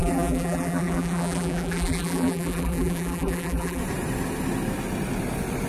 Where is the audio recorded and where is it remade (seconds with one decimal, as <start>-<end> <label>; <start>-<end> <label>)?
0.0-3.8 remade; 3.8-5.7 recorded